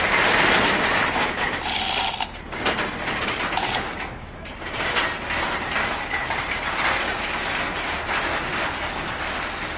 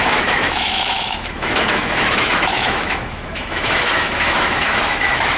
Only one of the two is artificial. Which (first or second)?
second